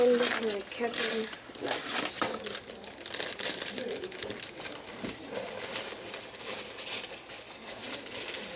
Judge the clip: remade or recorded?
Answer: recorded